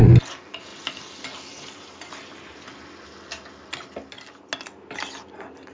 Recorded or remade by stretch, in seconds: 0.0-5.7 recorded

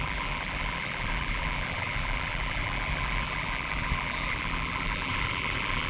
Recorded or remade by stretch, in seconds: 0.0-5.9 remade

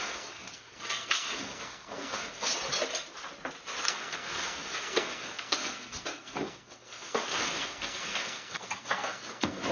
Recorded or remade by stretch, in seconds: 0.0-2.5 remade; 2.5-3.8 recorded; 3.8-9.7 remade

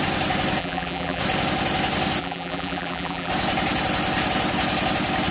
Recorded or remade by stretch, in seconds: 0.0-0.6 recorded; 0.6-1.2 remade; 1.2-2.2 recorded; 2.2-3.3 remade; 3.3-5.3 recorded

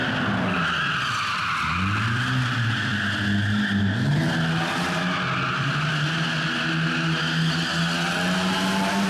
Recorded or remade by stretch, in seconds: 0.0-9.1 recorded

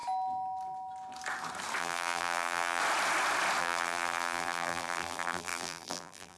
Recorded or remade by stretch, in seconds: 0.0-1.8 recorded; 1.8-2.8 remade; 2.8-3.6 recorded; 3.6-6.4 remade